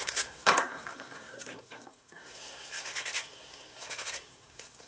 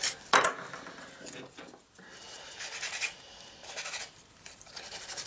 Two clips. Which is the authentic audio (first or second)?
second